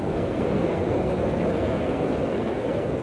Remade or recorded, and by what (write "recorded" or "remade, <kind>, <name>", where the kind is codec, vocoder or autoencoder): remade, codec, SNAC